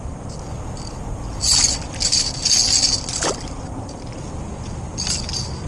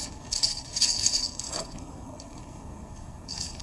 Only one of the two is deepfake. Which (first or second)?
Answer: second